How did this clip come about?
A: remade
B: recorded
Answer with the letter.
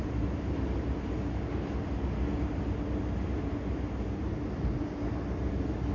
B